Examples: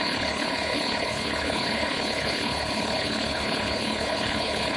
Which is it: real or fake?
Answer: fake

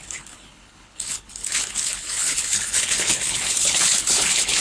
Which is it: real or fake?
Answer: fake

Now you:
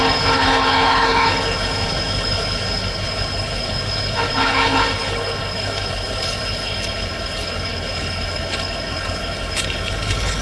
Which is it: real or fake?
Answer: fake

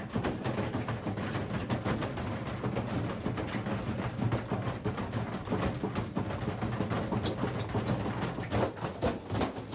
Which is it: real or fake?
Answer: real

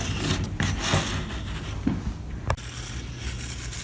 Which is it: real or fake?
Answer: real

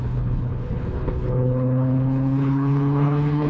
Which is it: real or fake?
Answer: fake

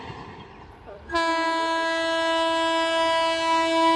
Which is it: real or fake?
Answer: real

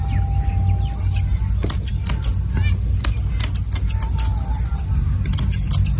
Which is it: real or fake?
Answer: real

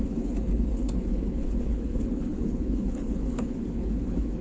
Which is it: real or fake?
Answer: fake